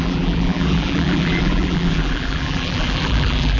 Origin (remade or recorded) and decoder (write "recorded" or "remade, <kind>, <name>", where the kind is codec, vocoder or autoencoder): remade, vocoder, BigVGAN v2